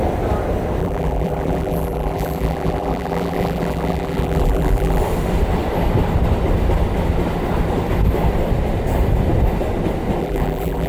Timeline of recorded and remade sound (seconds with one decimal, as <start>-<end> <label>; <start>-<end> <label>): 0.0-0.8 recorded; 0.8-5.0 remade; 5.0-10.2 recorded; 10.2-10.9 remade